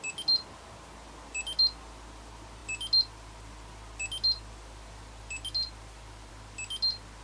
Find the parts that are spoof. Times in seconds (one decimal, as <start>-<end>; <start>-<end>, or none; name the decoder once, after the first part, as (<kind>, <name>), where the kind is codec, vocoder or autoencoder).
none